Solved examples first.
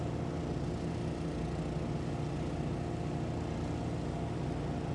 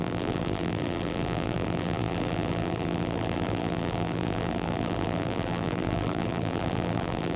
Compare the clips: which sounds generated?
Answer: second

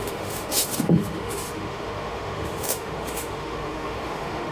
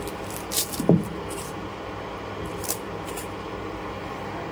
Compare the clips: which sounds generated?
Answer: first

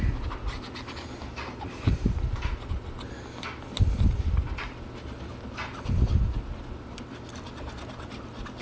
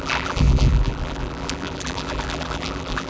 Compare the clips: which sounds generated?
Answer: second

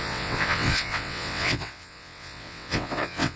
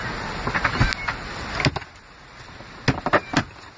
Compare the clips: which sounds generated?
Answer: first